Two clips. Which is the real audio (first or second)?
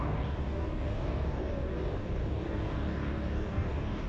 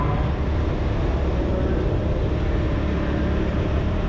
second